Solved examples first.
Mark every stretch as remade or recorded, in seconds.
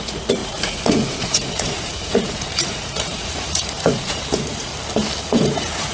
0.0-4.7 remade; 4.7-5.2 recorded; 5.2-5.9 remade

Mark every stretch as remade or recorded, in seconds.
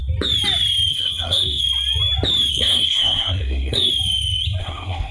0.0-0.9 recorded; 0.9-1.6 remade; 1.6-2.5 recorded; 2.5-3.9 remade; 3.9-4.6 recorded; 4.6-5.1 remade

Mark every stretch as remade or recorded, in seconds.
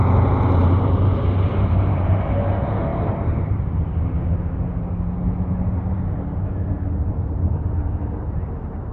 0.0-0.6 recorded; 0.6-2.1 remade; 2.1-2.9 recorded; 2.9-3.4 remade; 3.4-7.0 recorded; 7.0-8.9 remade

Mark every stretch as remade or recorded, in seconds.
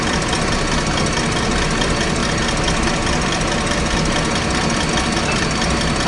0.0-6.1 recorded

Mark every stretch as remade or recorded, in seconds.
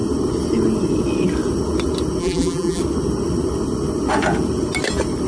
0.0-2.2 recorded; 2.2-2.8 remade; 2.8-5.3 recorded